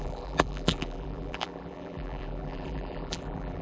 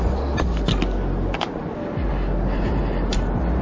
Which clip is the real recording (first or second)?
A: second